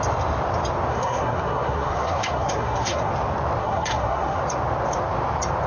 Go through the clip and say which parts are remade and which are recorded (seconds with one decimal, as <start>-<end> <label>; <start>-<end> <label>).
0.0-0.9 recorded; 0.9-3.1 remade; 3.1-3.6 recorded; 3.6-4.4 remade; 4.4-5.7 recorded